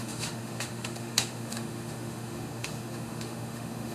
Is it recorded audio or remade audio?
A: remade